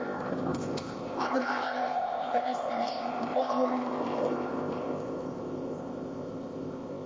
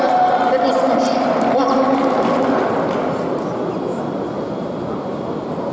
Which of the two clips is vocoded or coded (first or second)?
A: first